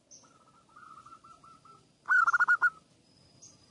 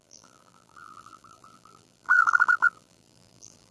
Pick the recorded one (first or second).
first